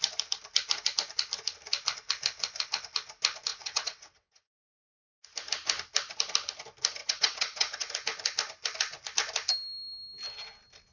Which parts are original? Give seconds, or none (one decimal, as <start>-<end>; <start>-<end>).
0.0-3.5; 5.1-7.0; 7.9-10.9